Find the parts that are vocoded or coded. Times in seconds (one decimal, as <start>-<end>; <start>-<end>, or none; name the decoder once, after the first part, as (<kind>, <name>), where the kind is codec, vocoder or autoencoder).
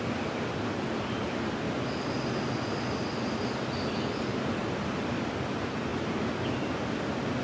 4.3-5.1 (vocoder, BigVGAN v2)